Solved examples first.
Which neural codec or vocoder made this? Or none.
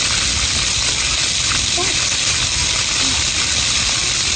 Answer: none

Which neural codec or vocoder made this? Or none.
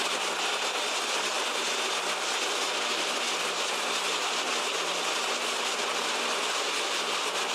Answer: none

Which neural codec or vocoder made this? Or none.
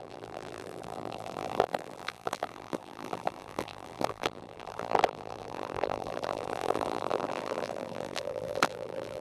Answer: vocoder, BigVGAN v2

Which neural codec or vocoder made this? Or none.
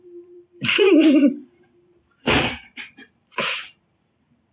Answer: vocoder, BigVGAN v2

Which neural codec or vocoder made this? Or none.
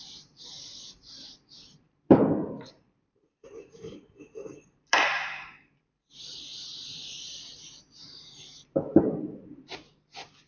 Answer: vocoder, BigVGAN v2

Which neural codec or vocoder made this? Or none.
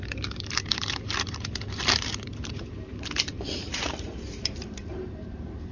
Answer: vocoder, BigVGAN v2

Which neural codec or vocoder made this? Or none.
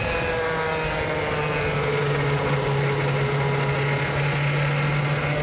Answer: none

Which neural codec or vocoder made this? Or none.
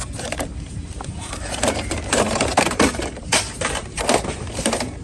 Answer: vocoder, BigVGAN v2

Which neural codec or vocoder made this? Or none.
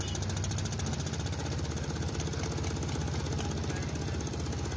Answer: none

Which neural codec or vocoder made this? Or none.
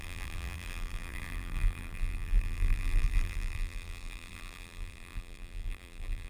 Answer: vocoder, BigVGAN v2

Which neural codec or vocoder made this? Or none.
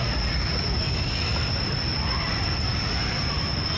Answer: vocoder, BigVGAN v2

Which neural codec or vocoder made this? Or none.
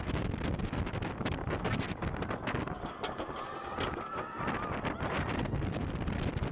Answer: none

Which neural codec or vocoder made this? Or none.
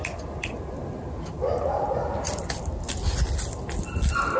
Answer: none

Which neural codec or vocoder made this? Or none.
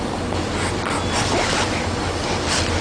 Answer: vocoder, BigVGAN v2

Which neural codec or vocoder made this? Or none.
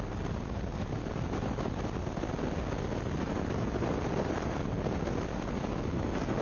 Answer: none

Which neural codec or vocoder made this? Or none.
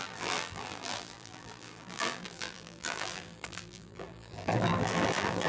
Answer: vocoder, BigVGAN v2